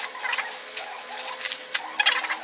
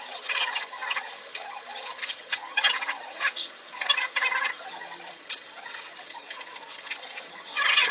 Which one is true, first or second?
first